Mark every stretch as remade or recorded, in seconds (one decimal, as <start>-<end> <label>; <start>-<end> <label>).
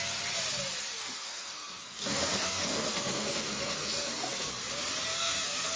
0.0-1.0 recorded; 1.0-4.5 remade; 4.5-5.1 recorded; 5.1-5.8 remade